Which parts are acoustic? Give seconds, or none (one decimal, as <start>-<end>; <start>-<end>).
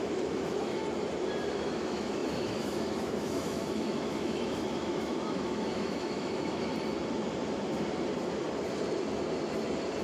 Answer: 0.8-1.5; 6.7-10.0